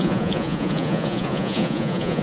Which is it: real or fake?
fake